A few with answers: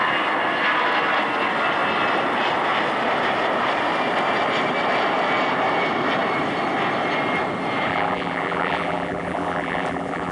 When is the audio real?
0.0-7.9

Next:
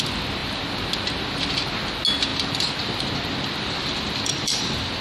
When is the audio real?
0.0-2.3

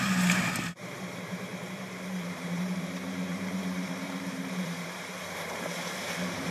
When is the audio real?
none

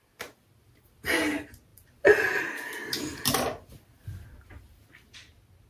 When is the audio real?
0.0-1.7; 2.5-3.1; 3.7-5.7

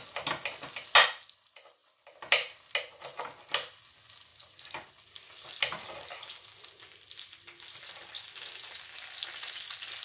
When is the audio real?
0.0-10.0

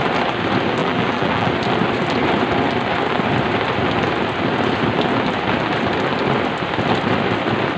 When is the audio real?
0.0-0.8; 1.5-7.8

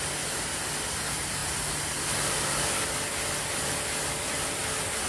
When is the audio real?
0.0-5.1